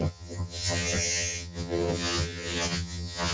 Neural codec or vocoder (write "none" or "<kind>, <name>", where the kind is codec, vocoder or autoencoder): vocoder, HiFi-GAN